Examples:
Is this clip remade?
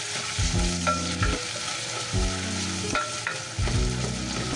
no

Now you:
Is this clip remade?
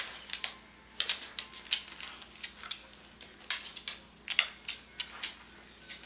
no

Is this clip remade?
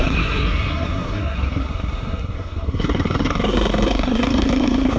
yes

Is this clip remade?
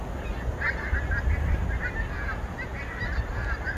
no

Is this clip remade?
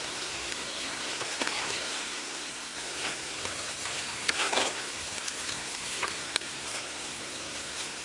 yes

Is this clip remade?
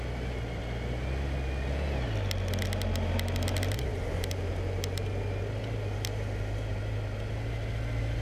no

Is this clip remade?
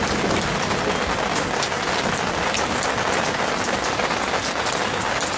no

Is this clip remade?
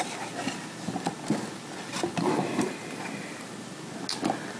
no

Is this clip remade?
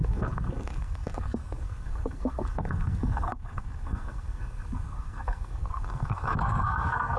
yes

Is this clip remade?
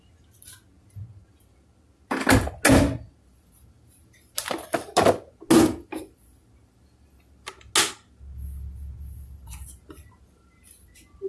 no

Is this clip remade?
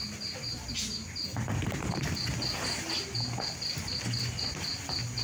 no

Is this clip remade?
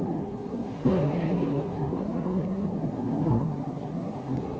yes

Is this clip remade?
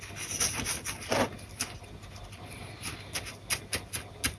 no